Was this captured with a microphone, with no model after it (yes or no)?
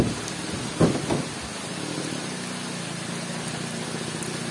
yes